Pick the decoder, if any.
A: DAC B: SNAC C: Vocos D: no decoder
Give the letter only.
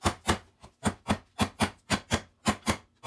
D